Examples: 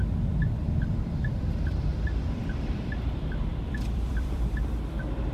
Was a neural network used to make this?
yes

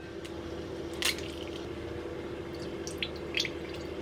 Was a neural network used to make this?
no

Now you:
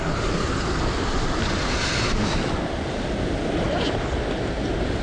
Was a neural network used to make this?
no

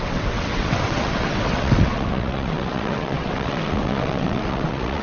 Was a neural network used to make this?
yes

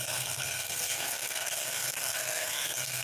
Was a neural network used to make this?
yes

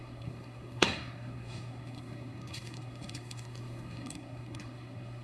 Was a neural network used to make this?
yes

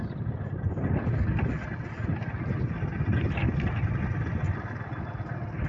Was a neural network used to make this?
no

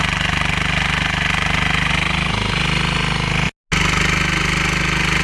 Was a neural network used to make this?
no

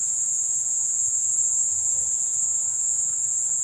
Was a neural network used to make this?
yes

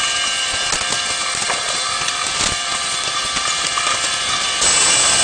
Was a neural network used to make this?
no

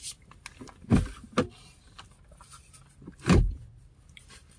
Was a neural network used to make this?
no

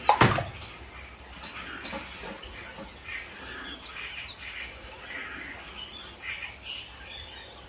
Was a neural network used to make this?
no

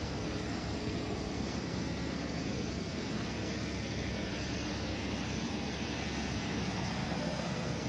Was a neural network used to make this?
yes